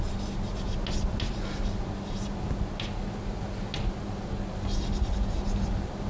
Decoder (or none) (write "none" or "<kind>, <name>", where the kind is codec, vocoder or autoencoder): none